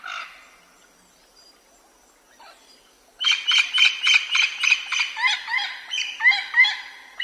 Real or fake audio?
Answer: real